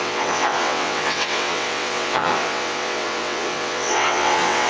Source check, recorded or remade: remade